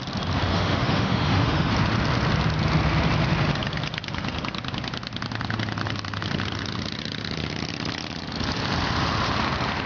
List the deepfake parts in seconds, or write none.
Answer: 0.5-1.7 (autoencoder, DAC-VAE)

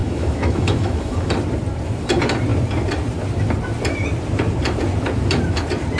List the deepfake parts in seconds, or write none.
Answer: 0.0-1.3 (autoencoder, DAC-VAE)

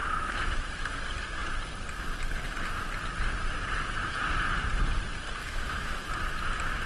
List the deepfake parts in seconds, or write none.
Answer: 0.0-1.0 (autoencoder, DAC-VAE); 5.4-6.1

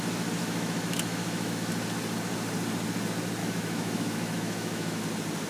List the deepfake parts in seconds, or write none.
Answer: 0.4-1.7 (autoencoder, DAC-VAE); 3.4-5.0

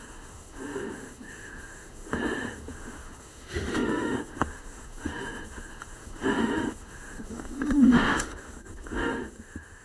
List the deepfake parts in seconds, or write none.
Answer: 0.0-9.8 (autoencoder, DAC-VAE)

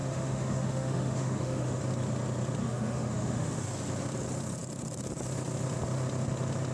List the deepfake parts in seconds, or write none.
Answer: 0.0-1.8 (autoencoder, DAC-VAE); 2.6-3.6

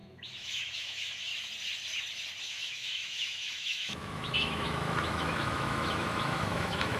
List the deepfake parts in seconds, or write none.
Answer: 0.0-1.3 (autoencoder, DAC-VAE); 2.4-7.0

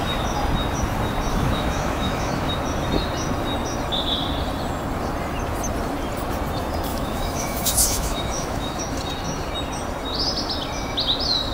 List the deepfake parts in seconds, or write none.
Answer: 1.3-2.5 (autoencoder, DAC-VAE); 6.9-8.8